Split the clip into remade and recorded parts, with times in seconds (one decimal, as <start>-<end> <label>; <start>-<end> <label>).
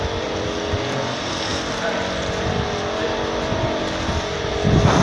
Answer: 0.0-5.0 recorded